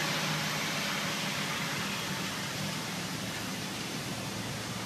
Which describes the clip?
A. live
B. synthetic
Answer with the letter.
A